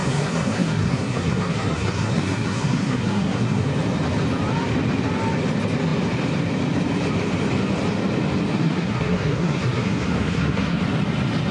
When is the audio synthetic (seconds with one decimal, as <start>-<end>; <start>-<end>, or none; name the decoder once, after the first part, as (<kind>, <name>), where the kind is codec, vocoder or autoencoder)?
0.0-3.7 (codec, SNAC); 8.5-10.8